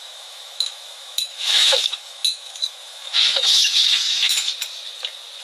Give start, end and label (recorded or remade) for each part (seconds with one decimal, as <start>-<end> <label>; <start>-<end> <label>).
0.0-4.5 remade; 4.5-5.4 recorded